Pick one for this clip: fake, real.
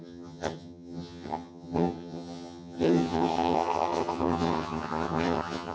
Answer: fake